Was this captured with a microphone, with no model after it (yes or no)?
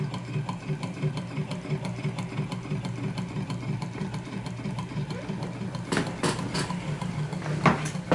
yes